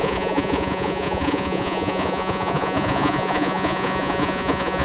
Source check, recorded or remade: remade